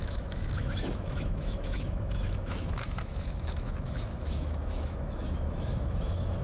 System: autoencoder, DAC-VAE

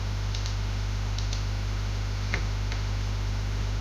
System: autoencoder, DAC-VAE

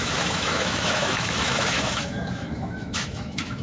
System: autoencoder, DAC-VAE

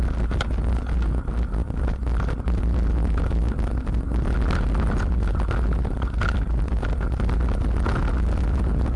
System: none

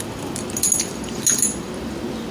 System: none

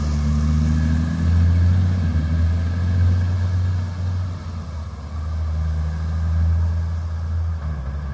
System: none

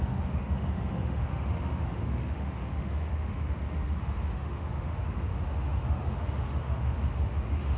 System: autoencoder, DAC-VAE